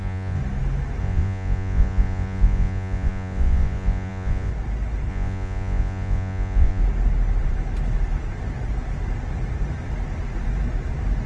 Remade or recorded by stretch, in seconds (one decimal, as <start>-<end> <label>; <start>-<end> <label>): 0.0-0.4 remade; 0.4-1.0 recorded; 1.0-4.5 remade; 4.5-5.1 recorded; 5.1-6.8 remade; 6.8-11.3 recorded